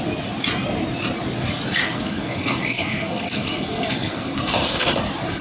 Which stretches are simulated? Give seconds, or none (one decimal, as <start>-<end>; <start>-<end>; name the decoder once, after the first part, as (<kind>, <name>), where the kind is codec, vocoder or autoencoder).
1.8-5.0 (codec, SNAC)